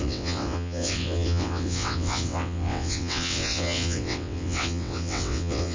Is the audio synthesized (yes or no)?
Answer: yes